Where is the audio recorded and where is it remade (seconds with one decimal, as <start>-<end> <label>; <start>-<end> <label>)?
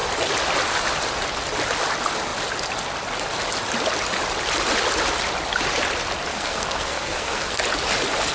0.0-6.3 recorded; 6.3-7.6 remade; 7.6-8.3 recorded